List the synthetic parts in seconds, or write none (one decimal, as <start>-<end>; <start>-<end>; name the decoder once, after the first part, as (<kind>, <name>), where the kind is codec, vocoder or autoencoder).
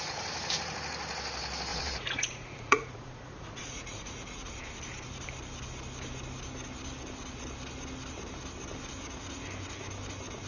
1.7-4.5 (vocoder, Vocos)